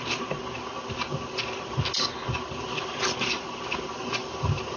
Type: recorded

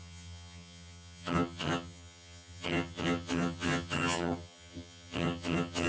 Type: remade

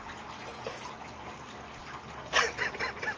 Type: recorded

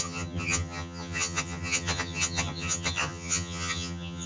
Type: remade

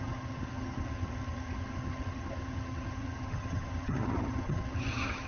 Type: remade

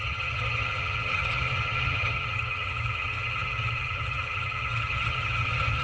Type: remade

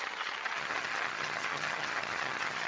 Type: remade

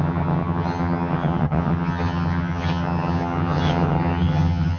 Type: remade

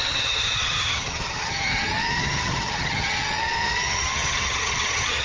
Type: remade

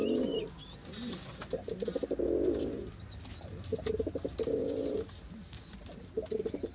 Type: recorded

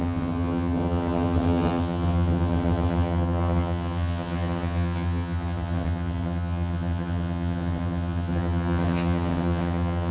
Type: remade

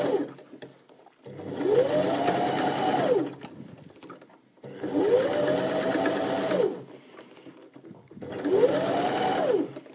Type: recorded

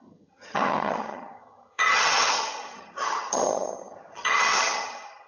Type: remade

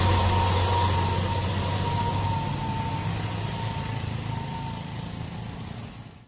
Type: recorded